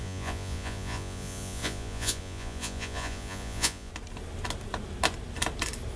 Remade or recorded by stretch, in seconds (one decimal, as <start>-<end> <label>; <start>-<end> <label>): 0.0-3.9 remade; 3.9-6.0 recorded